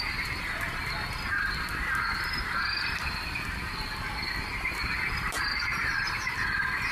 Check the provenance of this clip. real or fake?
real